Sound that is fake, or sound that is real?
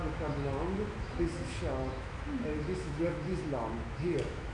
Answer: fake